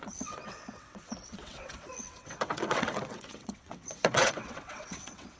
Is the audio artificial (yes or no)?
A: yes